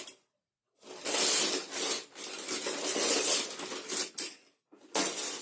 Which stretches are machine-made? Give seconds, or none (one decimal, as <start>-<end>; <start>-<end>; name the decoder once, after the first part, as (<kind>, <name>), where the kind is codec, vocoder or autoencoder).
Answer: none